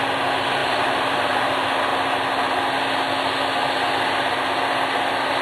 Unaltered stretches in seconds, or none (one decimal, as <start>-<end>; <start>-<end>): 0.0-0.6; 1.5-5.4